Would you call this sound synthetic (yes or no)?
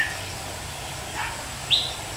no